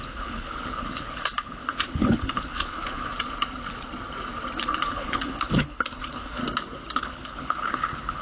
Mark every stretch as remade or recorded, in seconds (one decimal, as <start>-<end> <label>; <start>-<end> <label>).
0.0-3.1 remade; 3.1-4.9 recorded; 4.9-6.4 remade; 6.4-7.0 recorded; 7.0-8.2 remade